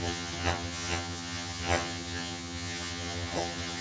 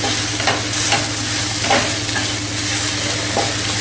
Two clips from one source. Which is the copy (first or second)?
first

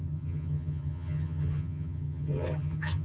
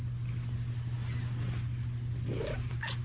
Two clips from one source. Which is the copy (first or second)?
first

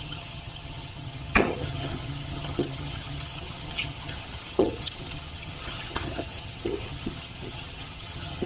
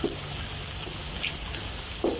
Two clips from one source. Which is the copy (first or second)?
first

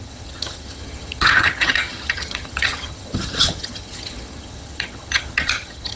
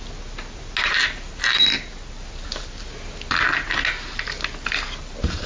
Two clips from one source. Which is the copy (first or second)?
first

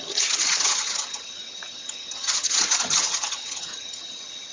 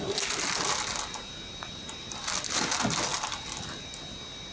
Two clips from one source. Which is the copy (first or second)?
first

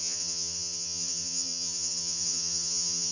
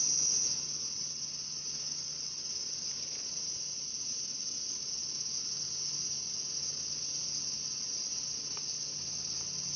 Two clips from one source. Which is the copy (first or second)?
first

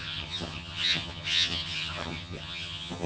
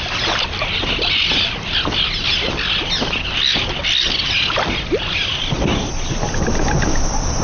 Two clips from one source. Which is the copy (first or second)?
first